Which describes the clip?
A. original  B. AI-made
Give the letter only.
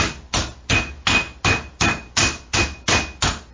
A